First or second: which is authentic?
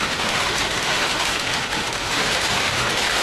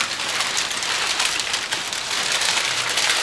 second